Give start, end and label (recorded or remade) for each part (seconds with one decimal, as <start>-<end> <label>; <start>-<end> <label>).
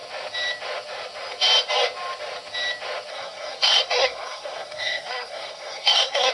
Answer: 0.0-3.1 recorded; 3.1-6.3 remade